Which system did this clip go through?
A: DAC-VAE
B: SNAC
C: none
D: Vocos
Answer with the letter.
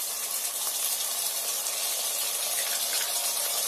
C